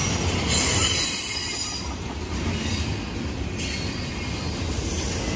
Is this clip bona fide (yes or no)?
yes